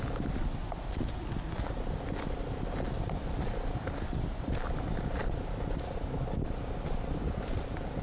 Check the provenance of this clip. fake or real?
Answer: real